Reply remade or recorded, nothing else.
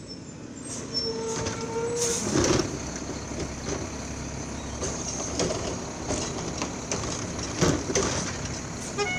recorded